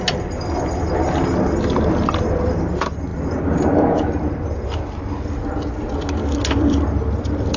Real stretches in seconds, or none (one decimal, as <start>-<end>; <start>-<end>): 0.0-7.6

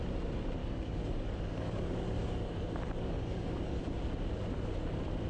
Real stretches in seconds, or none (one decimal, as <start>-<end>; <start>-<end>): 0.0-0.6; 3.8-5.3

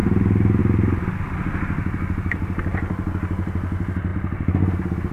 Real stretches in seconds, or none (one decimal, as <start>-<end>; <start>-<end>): 0.0-5.1

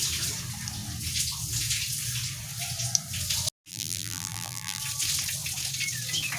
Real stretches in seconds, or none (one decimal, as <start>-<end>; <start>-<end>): 0.0-3.7; 4.8-6.4

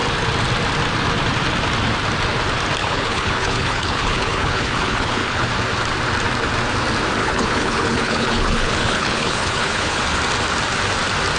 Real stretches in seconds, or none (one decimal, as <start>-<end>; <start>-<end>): 0.0-2.8; 5.5-7.2; 10.0-11.4